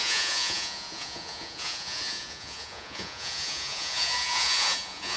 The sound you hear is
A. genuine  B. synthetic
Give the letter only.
B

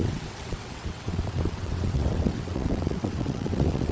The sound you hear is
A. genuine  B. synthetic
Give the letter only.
B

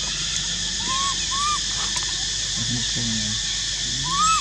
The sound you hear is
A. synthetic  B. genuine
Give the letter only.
B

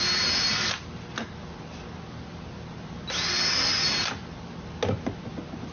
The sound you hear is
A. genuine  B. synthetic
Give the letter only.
A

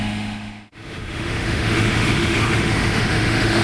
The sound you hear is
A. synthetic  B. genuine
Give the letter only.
A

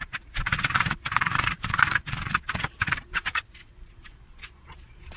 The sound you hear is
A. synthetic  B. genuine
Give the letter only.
A